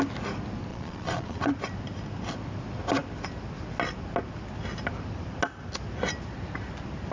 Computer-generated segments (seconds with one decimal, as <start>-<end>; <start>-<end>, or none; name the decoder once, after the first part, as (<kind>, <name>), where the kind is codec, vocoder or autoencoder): 0.7-1.6 (vocoder, Vocos)